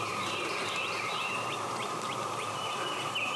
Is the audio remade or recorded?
remade